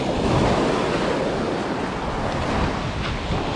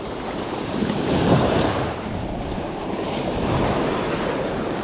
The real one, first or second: first